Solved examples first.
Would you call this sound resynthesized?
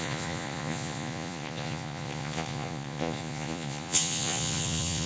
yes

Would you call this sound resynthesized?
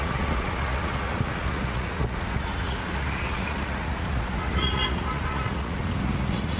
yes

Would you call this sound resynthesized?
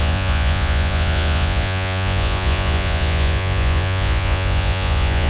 yes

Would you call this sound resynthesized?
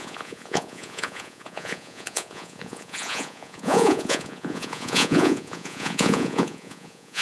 yes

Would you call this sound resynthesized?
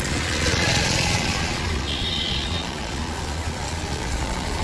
yes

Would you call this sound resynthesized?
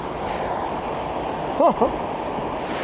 no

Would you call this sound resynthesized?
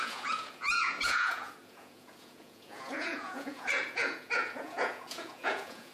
yes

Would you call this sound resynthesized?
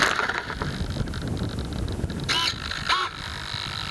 no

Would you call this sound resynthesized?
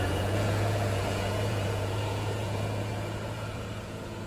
yes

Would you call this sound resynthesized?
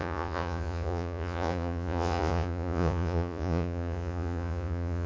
yes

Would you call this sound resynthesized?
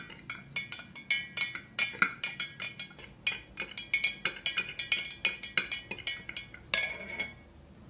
no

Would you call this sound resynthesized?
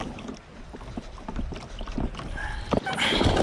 no